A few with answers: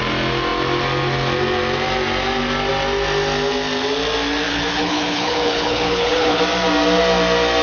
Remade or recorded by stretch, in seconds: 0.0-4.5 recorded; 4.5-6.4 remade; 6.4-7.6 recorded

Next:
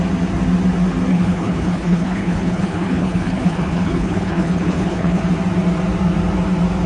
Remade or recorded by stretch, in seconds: 0.0-1.1 recorded; 1.1-5.2 remade; 5.2-6.9 recorded

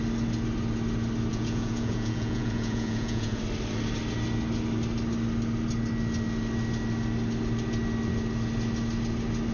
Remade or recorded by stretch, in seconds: 0.0-1.3 recorded; 1.3-3.4 remade; 3.4-9.5 recorded

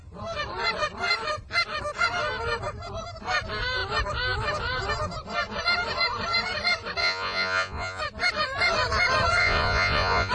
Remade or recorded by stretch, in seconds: 0.0-7.0 recorded; 7.0-8.0 remade; 8.0-9.4 recorded; 9.4-10.3 remade

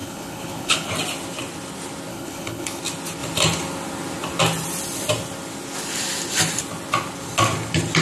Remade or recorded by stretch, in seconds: 0.0-0.9 remade; 0.9-2.1 recorded; 2.1-2.8 remade; 2.8-8.0 recorded

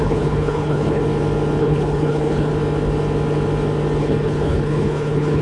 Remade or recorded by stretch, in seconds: 0.0-1.0 remade; 1.0-1.6 recorded; 1.6-2.5 remade; 2.5-4.0 recorded; 4.0-5.4 remade

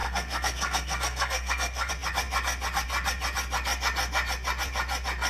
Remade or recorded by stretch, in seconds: 0.0-1.9 remade; 1.9-5.3 recorded